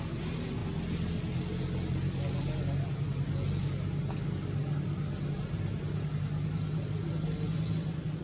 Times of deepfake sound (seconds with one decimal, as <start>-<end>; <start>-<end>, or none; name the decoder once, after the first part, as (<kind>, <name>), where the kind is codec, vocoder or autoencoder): none